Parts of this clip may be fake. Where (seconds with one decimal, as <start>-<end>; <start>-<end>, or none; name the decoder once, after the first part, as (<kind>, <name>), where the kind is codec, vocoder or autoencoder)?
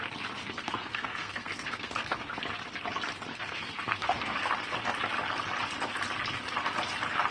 0.4-2.4 (codec, SNAC); 3.3-4.5